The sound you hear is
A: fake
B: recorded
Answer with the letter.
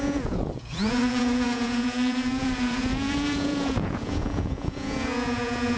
A